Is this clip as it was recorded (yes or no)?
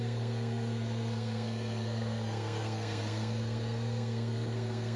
no